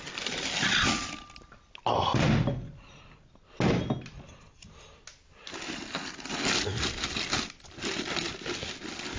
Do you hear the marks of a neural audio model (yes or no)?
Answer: no